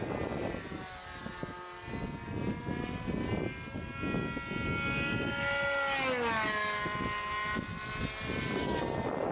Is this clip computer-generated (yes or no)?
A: no